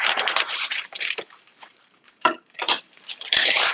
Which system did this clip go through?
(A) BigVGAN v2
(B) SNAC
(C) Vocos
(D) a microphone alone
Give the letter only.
A